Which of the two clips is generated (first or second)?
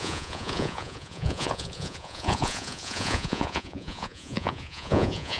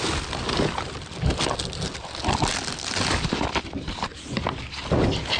first